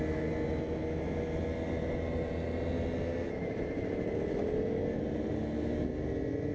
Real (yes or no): yes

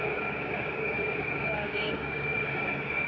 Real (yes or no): no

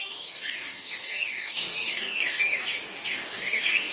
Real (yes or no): no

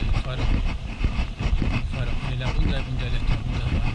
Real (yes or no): yes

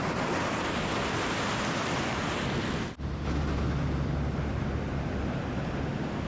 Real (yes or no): yes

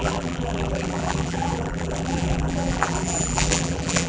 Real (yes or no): no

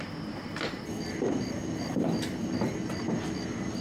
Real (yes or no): yes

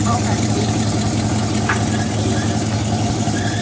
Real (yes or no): yes